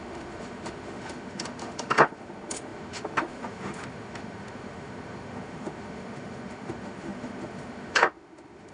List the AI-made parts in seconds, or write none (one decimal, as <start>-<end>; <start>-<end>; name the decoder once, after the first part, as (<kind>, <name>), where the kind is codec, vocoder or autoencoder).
0.0-8.7 (autoencoder, DAC-VAE)